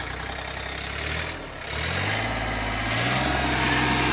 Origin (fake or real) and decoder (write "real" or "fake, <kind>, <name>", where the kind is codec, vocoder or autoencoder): real